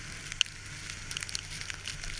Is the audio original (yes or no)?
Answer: yes